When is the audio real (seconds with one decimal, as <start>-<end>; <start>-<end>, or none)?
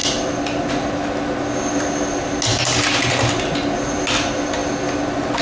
0.0-2.5; 3.3-5.4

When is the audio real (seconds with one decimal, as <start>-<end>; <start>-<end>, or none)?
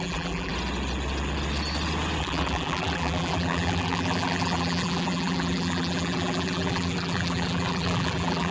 0.5-2.2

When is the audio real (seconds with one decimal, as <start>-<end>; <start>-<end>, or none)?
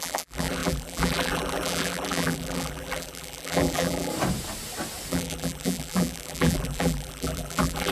4.1-5.1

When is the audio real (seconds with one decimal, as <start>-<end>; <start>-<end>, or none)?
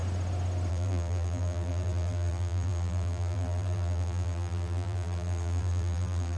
0.0-0.7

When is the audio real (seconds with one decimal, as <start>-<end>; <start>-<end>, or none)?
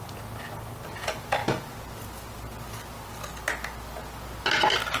0.0-5.0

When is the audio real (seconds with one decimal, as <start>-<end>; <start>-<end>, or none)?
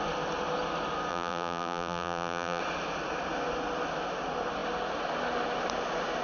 0.0-1.1; 2.6-6.2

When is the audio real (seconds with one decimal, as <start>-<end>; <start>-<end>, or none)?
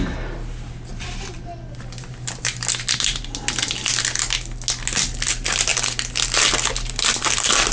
0.0-7.7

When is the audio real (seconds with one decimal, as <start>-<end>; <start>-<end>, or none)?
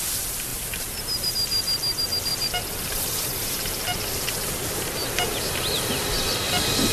0.0-0.5; 1.3-6.9